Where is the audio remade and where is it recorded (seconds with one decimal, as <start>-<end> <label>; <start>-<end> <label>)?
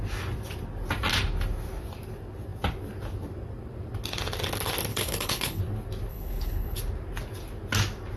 0.0-4.9 recorded; 4.9-5.6 remade; 5.6-6.1 recorded; 6.1-6.8 remade; 6.8-8.2 recorded